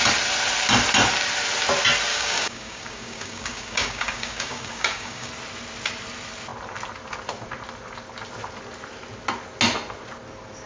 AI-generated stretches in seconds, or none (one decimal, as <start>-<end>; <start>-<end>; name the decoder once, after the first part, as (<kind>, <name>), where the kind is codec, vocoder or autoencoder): 2.1-5.3 (codec, DAC)